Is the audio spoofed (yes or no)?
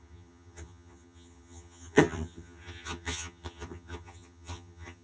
yes